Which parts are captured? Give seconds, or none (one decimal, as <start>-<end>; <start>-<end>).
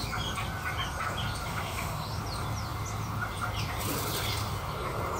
0.0-1.5; 2.2-5.2